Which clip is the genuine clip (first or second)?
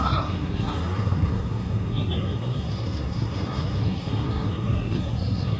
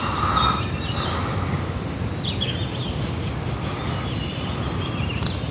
second